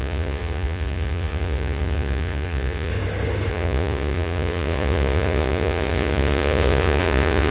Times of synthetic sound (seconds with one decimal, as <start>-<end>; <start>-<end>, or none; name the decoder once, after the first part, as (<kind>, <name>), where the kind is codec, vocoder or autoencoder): 0.0-2.9 (vocoder, Vocos); 3.5-7.5